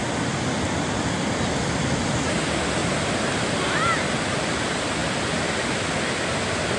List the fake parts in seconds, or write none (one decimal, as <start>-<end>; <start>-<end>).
none